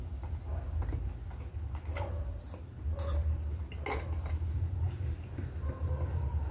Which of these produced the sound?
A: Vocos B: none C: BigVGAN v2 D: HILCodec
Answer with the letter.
B